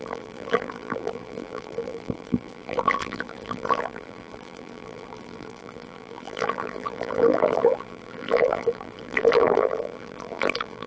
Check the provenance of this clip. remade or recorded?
remade